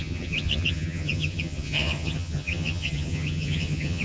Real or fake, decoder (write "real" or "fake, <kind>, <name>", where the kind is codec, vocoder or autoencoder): fake, vocoder, HiFi-GAN